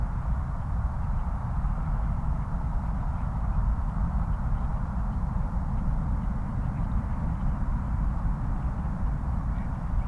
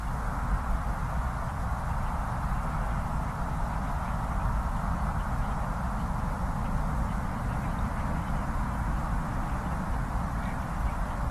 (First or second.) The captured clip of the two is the second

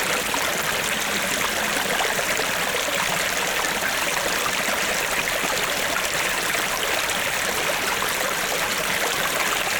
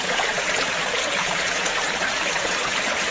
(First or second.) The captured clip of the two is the first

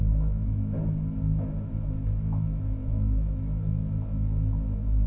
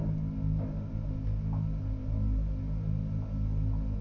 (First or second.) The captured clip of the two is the second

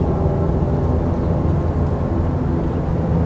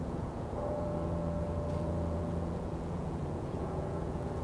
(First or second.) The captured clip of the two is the first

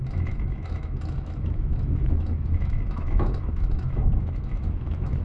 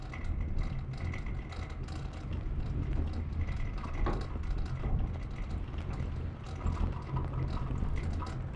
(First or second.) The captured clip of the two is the second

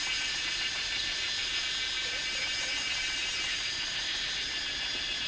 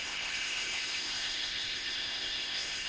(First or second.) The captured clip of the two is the first